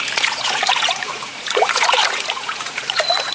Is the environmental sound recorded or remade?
remade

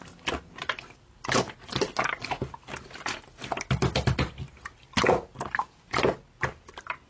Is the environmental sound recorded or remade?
recorded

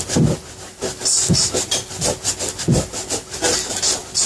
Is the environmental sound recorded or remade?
recorded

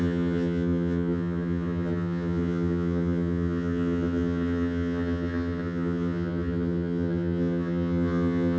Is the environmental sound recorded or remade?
remade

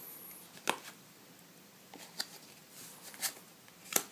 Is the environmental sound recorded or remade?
recorded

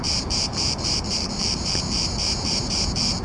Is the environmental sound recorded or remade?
remade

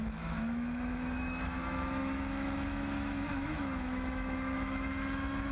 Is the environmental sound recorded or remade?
remade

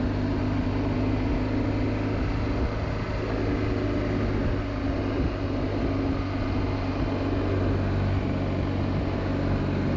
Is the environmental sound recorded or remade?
recorded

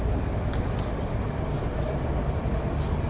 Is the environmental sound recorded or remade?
recorded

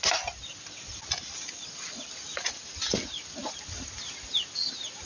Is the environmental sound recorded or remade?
recorded